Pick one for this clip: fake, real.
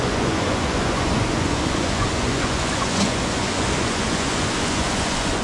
fake